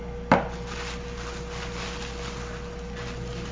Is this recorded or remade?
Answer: recorded